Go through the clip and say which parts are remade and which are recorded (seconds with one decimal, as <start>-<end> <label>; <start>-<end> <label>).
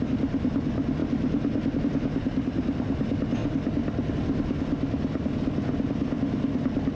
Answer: 0.0-6.9 recorded